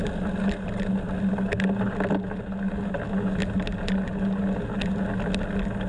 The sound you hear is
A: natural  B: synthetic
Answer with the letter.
A